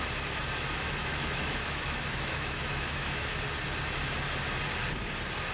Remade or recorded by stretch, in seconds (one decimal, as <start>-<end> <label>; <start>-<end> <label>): 0.0-1.0 recorded; 1.0-3.3 remade; 3.3-5.5 recorded

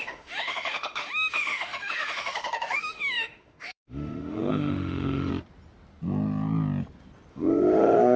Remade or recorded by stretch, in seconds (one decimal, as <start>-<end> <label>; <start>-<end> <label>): 0.0-5.3 remade; 5.3-7.3 recorded; 7.3-8.2 remade